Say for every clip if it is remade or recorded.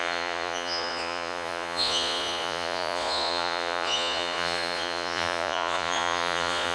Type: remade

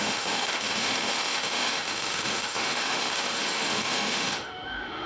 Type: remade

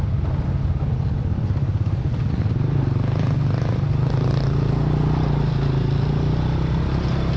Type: recorded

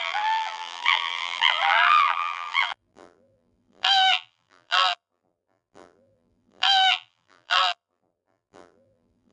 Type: remade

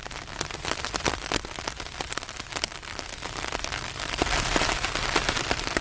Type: recorded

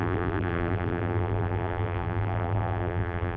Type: remade